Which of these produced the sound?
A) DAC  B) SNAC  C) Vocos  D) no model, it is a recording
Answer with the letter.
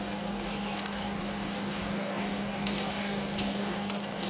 A